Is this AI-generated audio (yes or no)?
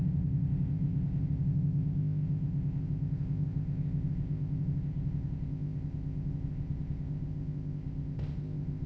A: yes